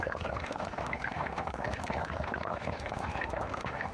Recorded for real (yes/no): no